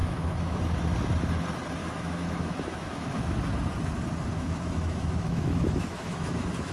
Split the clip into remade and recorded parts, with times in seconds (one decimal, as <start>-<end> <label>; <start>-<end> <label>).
0.0-0.6 remade; 0.6-1.8 recorded; 1.8-3.4 remade; 3.4-4.3 recorded; 4.3-6.7 remade